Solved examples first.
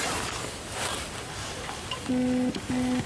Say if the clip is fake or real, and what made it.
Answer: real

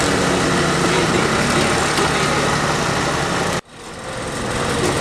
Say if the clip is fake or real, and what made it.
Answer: real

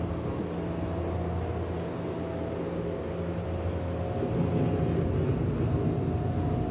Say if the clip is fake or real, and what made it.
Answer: real